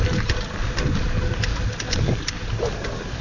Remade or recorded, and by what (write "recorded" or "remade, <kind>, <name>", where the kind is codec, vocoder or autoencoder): recorded